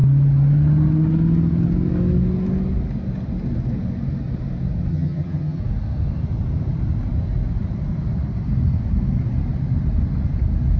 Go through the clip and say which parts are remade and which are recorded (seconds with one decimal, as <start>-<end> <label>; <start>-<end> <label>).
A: 0.0-4.9 recorded; 4.9-5.6 remade; 5.6-10.8 recorded